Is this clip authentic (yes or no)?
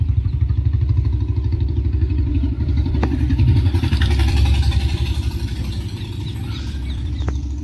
no